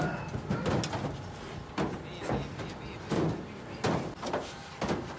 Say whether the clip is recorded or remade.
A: recorded